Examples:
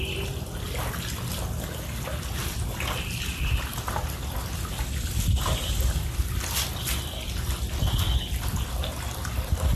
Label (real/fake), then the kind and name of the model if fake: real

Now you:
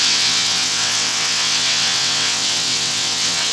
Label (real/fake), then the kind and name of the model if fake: fake, vocoder, WaveNeXt